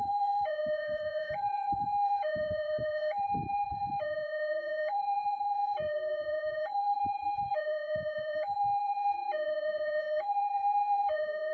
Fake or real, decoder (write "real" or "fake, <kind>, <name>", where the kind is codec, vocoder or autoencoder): fake, vocoder, Vocos